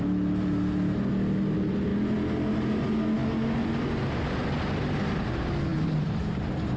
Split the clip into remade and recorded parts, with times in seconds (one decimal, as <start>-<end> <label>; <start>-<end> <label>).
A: 0.0-6.8 recorded